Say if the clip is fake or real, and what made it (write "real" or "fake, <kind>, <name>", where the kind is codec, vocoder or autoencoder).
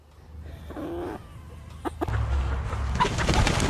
real